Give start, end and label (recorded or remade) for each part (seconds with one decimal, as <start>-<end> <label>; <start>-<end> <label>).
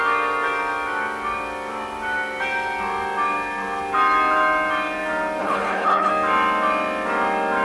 0.0-5.4 recorded; 5.4-6.1 remade; 6.1-7.6 recorded